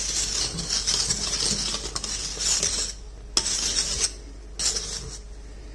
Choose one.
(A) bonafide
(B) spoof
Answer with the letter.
A